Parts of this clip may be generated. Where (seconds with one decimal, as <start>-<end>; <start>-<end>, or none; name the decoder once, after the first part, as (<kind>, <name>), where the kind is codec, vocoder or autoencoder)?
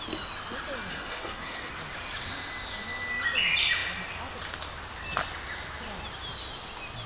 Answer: 0.9-1.7 (codec, SNAC)